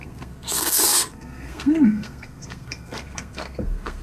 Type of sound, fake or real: fake